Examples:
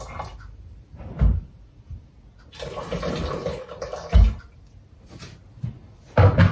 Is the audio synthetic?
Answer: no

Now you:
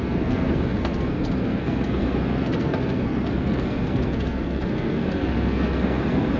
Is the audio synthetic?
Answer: yes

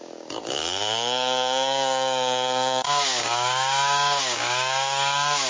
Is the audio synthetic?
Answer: yes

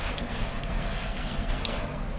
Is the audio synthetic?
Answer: yes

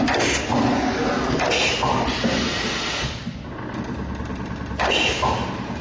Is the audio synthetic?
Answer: no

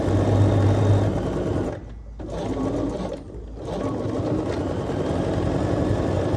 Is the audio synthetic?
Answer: no